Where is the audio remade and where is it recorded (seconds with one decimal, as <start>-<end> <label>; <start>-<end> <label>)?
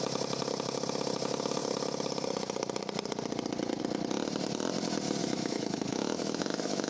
0.0-5.2 recorded; 5.2-6.9 remade